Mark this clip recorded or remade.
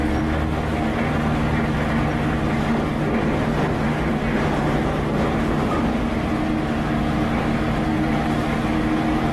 recorded